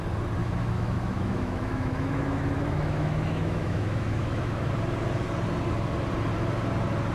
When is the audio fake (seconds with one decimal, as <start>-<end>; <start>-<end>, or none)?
0.4-4.7